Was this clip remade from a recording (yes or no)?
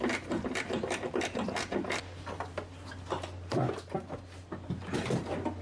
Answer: no